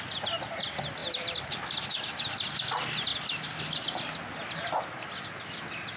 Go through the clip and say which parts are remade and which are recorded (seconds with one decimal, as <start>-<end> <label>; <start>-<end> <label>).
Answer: 0.0-6.0 recorded